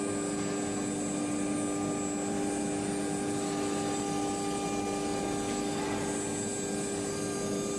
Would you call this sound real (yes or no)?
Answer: yes